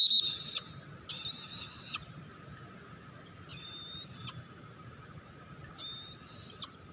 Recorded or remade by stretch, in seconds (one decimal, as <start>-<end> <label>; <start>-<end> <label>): 0.0-6.9 recorded